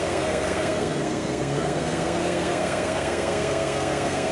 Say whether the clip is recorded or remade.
remade